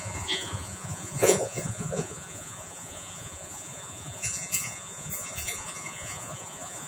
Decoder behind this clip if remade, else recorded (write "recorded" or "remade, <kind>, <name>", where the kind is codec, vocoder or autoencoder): remade, vocoder, Vocos